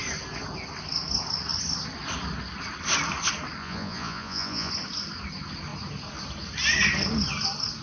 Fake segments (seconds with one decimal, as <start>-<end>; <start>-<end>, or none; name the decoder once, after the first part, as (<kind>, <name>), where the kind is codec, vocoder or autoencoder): 3.6-4.7 (vocoder, Vocos)